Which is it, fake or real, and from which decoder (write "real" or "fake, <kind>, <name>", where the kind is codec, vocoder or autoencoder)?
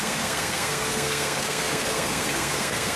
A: fake, codec, SNAC